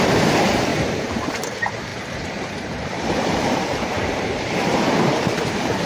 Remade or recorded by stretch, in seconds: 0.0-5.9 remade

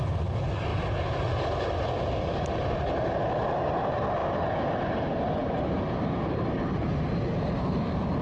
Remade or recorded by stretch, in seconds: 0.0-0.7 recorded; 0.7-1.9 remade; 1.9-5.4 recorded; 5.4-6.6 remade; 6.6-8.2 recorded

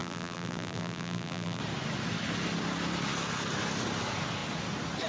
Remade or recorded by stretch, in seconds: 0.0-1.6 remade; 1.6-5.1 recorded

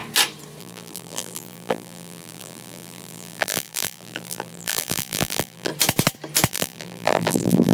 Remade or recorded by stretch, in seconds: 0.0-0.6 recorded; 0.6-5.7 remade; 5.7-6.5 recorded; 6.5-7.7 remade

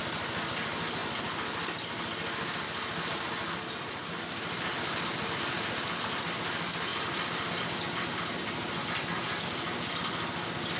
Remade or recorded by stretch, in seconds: 0.0-10.8 recorded

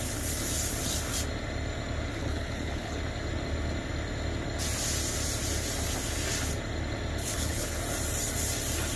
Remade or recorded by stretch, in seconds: 0.0-2.1 recorded; 2.1-3.0 remade; 3.0-7.2 recorded; 7.2-7.8 remade; 7.8-9.0 recorded

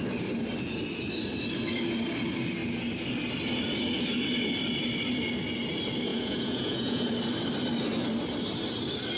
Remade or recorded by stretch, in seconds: 0.0-6.1 recorded; 6.1-7.0 remade; 7.0-9.2 recorded